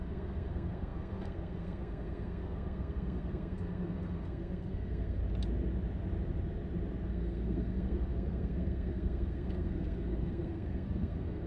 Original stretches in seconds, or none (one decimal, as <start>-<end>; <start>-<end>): 5.2-7.1